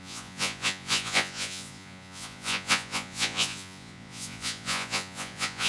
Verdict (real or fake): fake